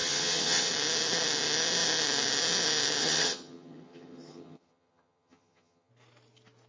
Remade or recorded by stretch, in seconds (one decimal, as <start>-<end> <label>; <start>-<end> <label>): 0.0-0.7 remade; 0.7-3.0 recorded; 3.0-5.9 remade; 5.9-6.7 recorded